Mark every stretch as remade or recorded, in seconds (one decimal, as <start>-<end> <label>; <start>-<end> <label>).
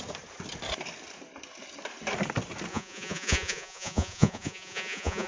0.0-2.7 recorded; 2.7-5.3 remade